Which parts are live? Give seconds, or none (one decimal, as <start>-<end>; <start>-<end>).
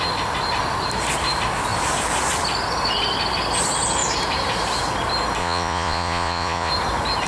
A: 0.0-5.4; 6.7-7.3